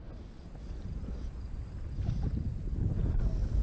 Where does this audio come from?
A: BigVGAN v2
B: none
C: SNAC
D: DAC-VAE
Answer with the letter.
B